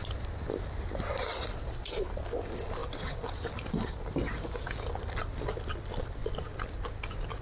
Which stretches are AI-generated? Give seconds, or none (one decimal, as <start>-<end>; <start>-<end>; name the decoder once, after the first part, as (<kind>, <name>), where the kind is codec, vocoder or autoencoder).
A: 0.0-2.2 (vocoder, BigVGAN v2)